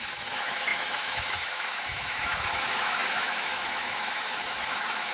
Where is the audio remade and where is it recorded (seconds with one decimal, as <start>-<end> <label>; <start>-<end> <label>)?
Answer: 0.0-5.1 remade

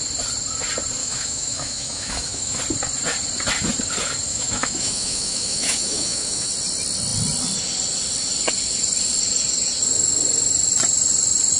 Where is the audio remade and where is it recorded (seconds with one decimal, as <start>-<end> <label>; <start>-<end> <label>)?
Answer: 0.0-1.0 recorded; 1.0-2.6 remade; 2.6-4.3 recorded; 4.3-6.5 remade; 6.5-11.6 recorded

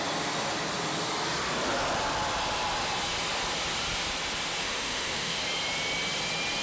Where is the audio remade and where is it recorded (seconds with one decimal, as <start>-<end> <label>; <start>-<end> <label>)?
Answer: 0.0-4.6 recorded; 4.6-5.4 remade; 5.4-6.6 recorded

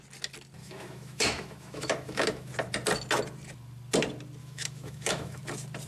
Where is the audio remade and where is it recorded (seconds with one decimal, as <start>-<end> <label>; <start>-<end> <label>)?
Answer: 0.0-0.6 recorded; 0.6-2.5 remade; 2.5-4.4 recorded; 4.4-5.4 remade; 5.4-5.9 recorded

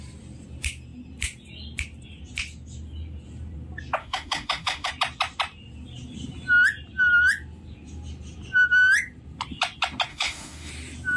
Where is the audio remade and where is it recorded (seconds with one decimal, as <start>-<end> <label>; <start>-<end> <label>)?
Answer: 0.0-4.0 recorded; 4.0-4.9 remade; 4.9-10.1 recorded; 10.1-10.7 remade; 10.7-11.2 recorded